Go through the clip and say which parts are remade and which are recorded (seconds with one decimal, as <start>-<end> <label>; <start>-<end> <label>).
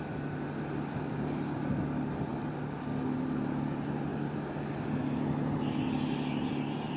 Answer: 0.0-7.0 recorded